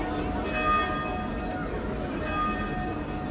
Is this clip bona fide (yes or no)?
yes